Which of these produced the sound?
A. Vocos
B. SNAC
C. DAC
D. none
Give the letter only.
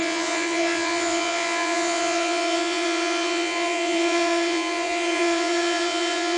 A